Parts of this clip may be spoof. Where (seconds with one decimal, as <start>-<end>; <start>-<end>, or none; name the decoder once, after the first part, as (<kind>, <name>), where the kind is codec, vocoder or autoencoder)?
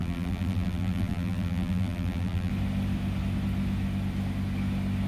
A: 0.0-2.5 (vocoder, BigVGAN v2)